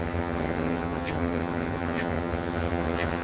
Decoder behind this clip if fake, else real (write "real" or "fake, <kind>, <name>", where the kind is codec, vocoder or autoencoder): fake, vocoder, HiFi-GAN